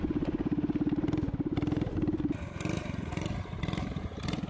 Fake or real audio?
real